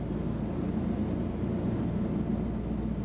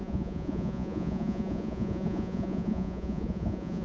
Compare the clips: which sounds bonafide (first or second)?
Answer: first